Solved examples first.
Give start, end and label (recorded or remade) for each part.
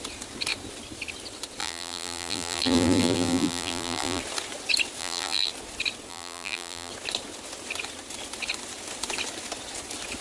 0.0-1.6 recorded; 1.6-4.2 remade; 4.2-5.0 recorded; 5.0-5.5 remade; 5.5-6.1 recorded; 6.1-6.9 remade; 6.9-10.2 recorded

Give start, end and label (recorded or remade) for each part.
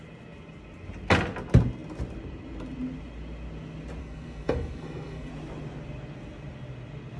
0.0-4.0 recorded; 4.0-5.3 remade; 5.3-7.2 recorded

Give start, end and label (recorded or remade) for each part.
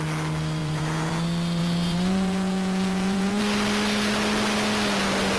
0.0-0.6 recorded; 0.6-1.1 remade; 1.1-1.6 recorded; 1.6-3.4 remade; 3.4-5.4 recorded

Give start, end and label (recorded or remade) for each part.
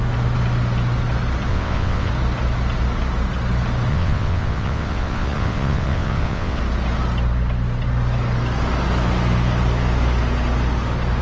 0.0-1.5 recorded; 1.5-2.1 remade; 2.1-3.9 recorded; 3.9-6.6 remade; 6.6-11.2 recorded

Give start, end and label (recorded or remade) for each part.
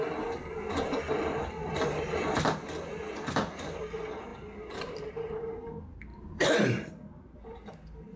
0.0-6.1 recorded; 6.1-6.9 remade; 6.9-8.2 recorded